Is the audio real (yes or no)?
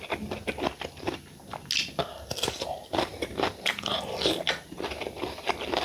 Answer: yes